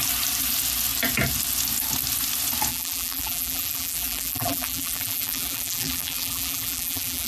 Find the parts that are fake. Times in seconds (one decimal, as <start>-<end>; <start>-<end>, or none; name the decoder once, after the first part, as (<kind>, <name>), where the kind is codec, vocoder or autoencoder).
2.7-7.3 (vocoder, BigVGAN v2)